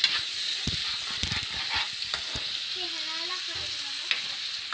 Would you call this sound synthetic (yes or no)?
no